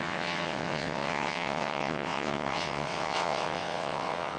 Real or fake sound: fake